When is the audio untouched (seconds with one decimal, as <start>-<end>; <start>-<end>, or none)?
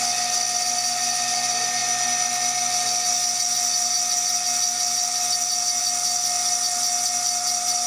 0.0-7.9